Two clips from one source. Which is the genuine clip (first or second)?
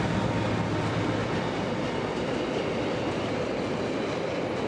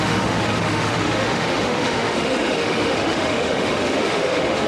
first